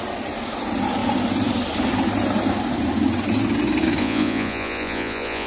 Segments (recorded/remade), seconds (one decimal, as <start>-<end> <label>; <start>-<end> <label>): 0.0-4.0 recorded; 4.0-5.5 remade